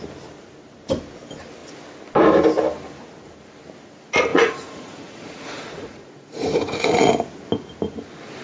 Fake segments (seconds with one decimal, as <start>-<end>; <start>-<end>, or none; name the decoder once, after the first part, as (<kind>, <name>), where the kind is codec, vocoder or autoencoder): 4.3-7.1 (vocoder, Vocos)

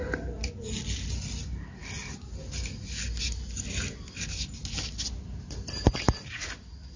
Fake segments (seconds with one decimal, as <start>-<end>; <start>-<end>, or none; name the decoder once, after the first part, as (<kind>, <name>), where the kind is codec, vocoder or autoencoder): none

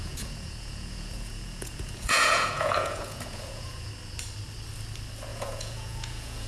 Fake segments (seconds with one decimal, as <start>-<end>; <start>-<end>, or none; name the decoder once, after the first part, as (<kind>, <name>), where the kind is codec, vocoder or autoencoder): 0.0-3.9 (vocoder, Vocos); 5.3-6.5

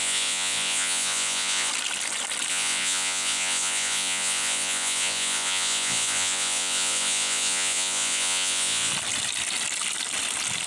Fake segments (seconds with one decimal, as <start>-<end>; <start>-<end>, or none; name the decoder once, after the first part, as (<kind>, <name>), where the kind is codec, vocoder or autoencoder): 0.0-1.7 (vocoder, Vocos); 2.5-8.9

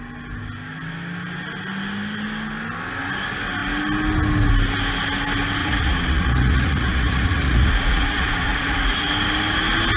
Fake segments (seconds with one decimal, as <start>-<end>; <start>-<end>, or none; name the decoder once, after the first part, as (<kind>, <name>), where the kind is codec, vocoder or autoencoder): 5.6-9.1 (vocoder, Vocos)

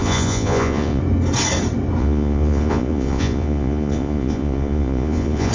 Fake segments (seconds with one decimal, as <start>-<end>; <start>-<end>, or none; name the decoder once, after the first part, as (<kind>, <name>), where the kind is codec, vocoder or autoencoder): 0.0-1.0 (vocoder, Vocos); 2.0-5.5